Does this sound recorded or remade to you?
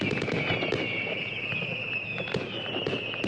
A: recorded